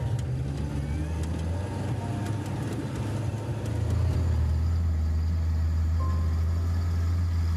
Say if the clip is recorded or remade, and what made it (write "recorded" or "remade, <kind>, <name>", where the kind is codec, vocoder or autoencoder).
recorded